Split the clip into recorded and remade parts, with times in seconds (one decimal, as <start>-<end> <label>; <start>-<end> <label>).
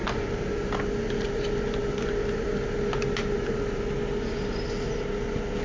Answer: 0.0-5.6 recorded